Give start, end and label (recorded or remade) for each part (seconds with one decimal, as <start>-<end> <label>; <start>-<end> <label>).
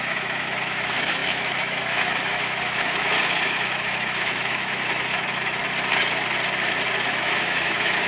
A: 0.0-5.6 remade; 5.6-7.1 recorded; 7.1-8.1 remade